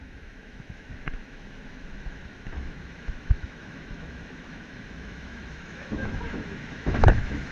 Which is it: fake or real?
fake